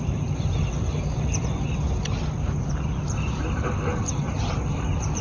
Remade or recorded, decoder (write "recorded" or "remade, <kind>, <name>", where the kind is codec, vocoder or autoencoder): recorded